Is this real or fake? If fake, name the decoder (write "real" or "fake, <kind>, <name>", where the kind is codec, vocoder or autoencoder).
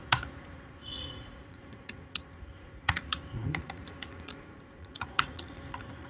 fake, vocoder, Vocos